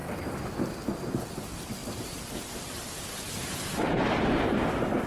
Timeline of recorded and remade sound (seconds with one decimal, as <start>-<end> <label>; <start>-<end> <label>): 0.0-1.8 recorded; 1.8-5.1 remade